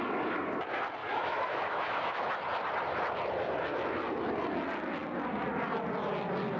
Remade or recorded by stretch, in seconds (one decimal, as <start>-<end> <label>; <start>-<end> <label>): 0.0-1.0 recorded; 1.0-2.3 remade; 2.3-6.6 recorded